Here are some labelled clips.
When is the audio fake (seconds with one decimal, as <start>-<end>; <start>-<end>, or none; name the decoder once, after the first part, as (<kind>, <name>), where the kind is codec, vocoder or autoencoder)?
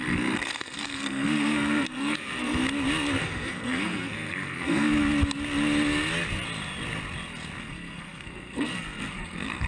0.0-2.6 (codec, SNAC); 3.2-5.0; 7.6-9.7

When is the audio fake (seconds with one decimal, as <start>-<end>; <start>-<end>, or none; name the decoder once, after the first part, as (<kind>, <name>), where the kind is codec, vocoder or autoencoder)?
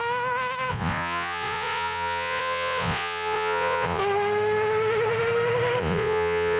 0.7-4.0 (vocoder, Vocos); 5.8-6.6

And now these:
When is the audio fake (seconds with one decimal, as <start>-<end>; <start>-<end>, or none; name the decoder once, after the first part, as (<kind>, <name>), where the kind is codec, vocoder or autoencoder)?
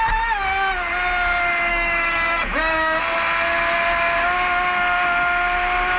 1.7-3.0 (codec, DAC)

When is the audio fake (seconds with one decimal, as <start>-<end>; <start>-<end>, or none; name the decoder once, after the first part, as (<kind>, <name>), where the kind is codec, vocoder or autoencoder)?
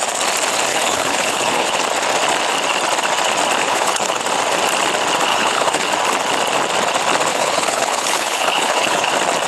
0.7-1.8 (codec, HILCodec); 3.6-4.2; 5.3-5.9; 7.3-9.1